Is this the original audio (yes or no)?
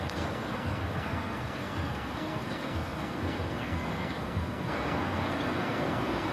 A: no